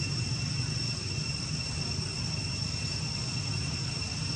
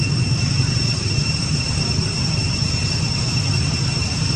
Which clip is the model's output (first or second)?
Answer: second